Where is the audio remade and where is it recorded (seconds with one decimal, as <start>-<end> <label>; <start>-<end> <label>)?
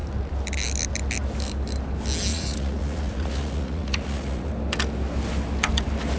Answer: 0.0-2.3 recorded; 2.3-4.5 remade; 4.5-6.2 recorded